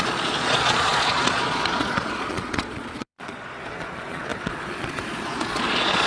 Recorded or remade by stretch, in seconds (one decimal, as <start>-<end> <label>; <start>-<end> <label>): 0.0-6.1 remade